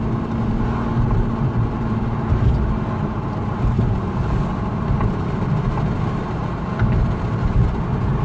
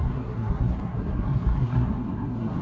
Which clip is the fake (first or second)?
second